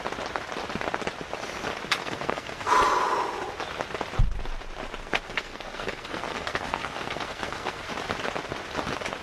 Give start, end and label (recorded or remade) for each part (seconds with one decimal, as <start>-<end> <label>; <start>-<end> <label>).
0.0-2.0 recorded; 2.0-2.7 remade; 2.7-5.0 recorded; 5.0-7.9 remade; 7.9-9.2 recorded